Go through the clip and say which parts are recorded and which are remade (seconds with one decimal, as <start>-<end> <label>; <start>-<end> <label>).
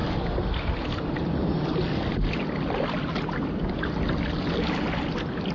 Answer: 0.0-5.5 recorded